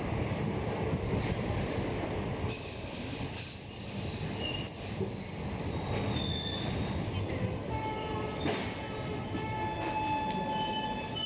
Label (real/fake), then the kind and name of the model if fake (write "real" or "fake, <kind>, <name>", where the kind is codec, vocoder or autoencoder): real